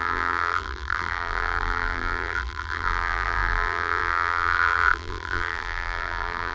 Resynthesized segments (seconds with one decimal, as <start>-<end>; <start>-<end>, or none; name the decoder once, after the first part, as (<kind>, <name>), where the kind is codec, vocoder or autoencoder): 0.0-6.5 (vocoder, BigVGAN v2)